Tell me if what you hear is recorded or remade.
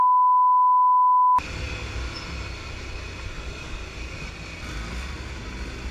recorded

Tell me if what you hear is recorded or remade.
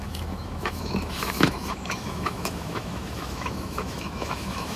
remade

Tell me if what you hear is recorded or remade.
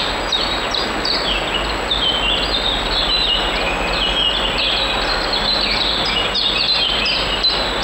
recorded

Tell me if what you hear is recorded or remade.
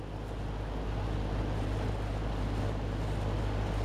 recorded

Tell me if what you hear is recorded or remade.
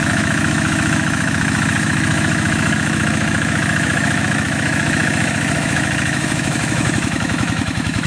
remade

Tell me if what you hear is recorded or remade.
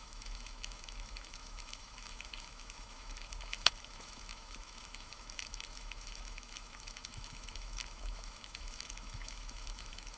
remade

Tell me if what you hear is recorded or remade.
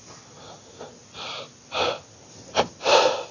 recorded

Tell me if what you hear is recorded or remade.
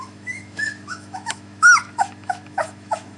remade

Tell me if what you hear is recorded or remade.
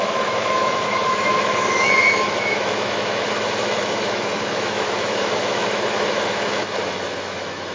remade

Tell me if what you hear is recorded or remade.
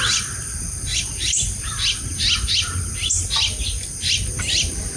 recorded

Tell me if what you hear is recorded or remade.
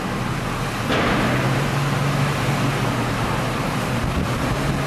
recorded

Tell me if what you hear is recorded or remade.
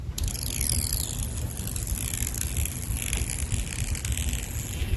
recorded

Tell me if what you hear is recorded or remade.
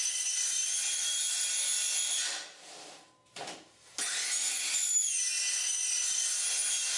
recorded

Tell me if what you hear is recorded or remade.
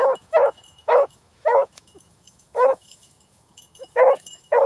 remade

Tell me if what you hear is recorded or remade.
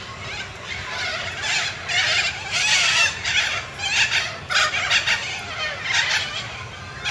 recorded